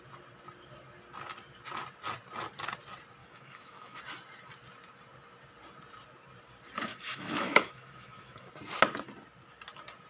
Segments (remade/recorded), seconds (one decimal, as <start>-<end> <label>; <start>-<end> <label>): 0.0-3.2 recorded; 3.2-4.0 remade; 4.0-6.9 recorded; 6.9-8.5 remade; 8.5-10.1 recorded